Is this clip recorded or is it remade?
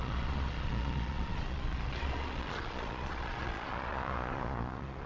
remade